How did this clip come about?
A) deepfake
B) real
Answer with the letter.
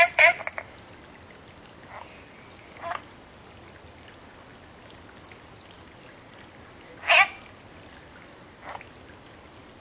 B